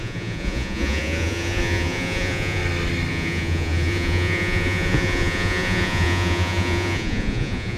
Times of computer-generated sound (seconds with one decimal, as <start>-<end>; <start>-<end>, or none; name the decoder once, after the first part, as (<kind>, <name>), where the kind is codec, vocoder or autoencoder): 0.0-2.6 (vocoder, Vocos); 3.1-7.8